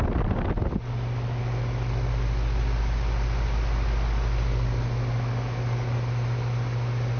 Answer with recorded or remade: recorded